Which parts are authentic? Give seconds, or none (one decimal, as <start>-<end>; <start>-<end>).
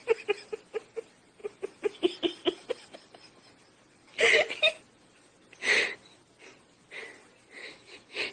0.0-7.6